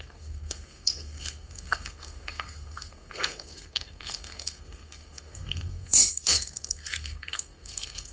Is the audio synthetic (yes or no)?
yes